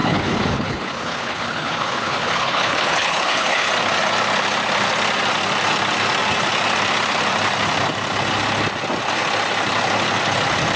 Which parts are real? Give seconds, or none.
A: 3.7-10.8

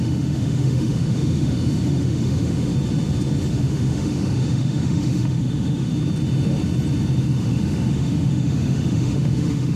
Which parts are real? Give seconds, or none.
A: 2.7-3.5; 5.9-7.2

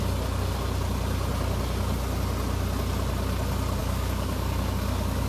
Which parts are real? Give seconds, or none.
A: 0.0-3.8

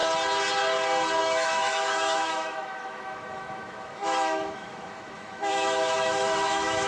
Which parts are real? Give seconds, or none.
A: 0.0-1.2

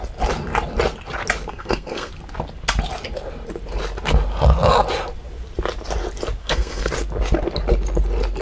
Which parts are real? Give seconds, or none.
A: 0.0-1.5; 2.1-6.4; 6.9-8.4

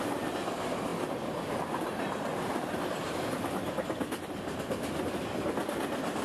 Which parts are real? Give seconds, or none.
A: 0.0-6.2

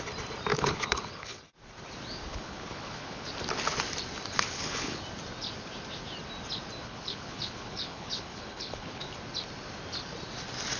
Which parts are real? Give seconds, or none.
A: 0.0-0.5; 1.4-2.3; 3.3-4.3; 5.0-6.8; 9.1-10.8

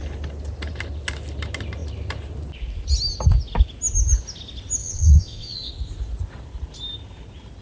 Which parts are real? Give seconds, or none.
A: 0.0-4.8; 5.7-7.6